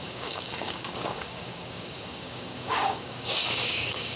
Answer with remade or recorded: remade